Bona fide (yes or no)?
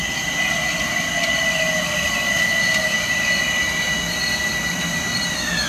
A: yes